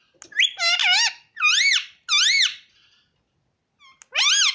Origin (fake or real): real